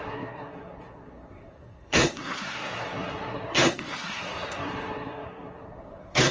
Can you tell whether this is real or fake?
fake